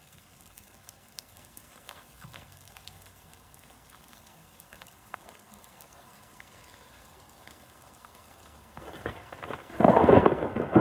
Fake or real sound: fake